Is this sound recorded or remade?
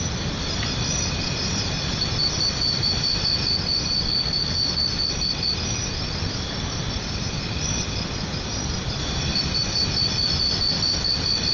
recorded